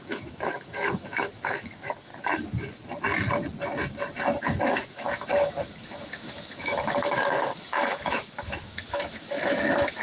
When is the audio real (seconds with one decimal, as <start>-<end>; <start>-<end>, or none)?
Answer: 2.1-4.4